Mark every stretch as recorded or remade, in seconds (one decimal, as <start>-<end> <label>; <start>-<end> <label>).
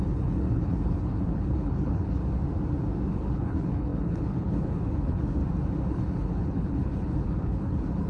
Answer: 0.0-2.2 remade; 2.2-3.1 recorded; 3.1-5.4 remade; 5.4-5.9 recorded; 5.9-8.1 remade